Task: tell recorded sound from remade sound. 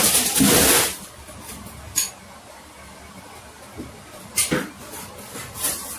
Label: recorded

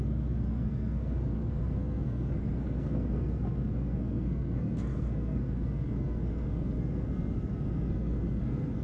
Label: remade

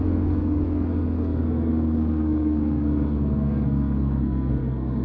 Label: remade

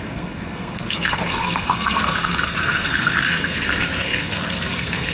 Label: remade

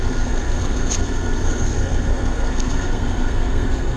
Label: remade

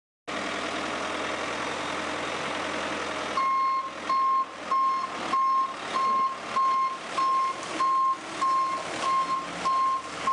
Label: recorded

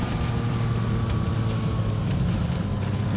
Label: recorded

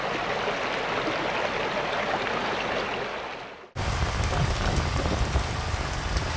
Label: recorded